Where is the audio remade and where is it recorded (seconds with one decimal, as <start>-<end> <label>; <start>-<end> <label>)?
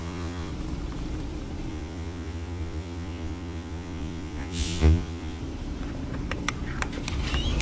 0.0-0.5 remade; 0.5-1.7 recorded; 1.7-5.4 remade; 5.4-7.6 recorded